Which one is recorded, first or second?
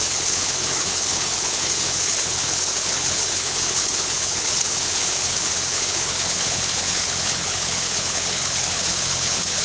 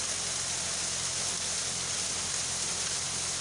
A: second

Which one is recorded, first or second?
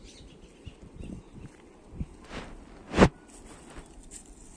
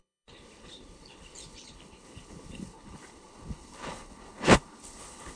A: first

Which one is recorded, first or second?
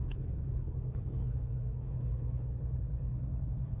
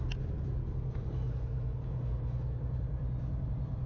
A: second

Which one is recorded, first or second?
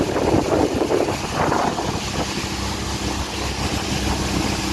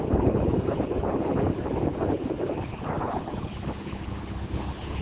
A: first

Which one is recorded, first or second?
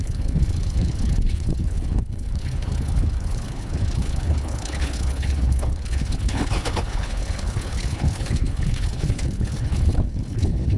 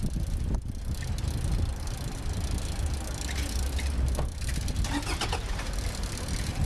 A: second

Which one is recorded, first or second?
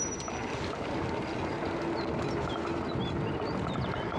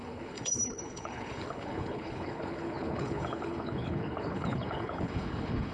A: first